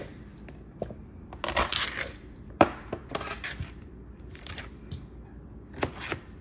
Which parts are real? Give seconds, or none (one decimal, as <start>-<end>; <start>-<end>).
0.0-1.7; 4.5-6.4